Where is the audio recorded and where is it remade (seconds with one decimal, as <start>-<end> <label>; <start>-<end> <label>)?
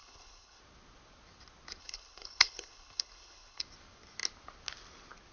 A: 0.0-0.6 remade; 0.6-1.8 recorded; 1.8-3.6 remade; 3.6-5.3 recorded